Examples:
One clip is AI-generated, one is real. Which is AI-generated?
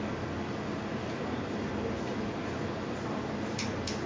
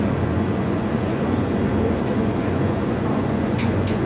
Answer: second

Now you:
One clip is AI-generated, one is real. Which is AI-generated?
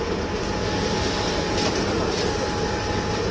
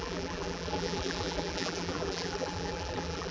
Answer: second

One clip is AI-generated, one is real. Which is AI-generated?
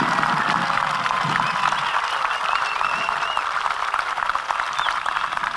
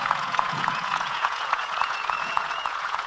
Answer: second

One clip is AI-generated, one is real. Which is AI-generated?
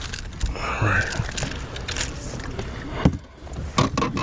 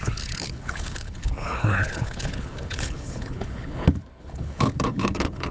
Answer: second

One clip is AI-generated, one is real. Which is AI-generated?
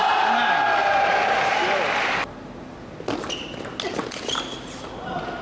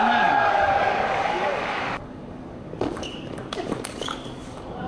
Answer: second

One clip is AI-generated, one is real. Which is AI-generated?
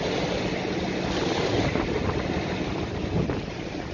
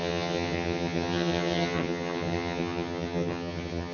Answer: second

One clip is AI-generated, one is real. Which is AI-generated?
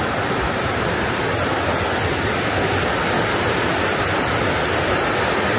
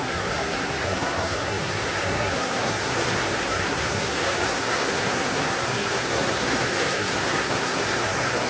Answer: second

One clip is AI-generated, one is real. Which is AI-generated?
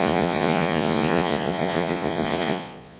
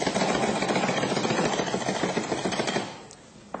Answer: first